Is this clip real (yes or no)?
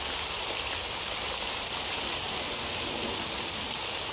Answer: yes